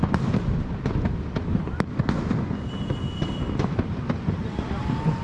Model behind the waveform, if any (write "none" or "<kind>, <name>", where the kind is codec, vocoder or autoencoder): none